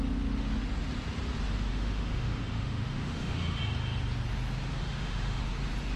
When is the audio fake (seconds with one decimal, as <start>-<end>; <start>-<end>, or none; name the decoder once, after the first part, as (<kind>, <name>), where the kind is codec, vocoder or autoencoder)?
1.7-3.6 (autoencoder, DAC-VAE); 4.8-5.4